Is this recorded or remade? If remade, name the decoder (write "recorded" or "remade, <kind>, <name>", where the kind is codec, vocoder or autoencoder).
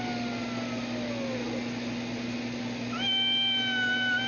recorded